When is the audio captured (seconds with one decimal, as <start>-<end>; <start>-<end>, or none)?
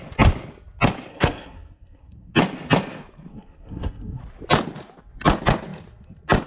0.0-1.1; 2.3-3.3; 4.2-6.5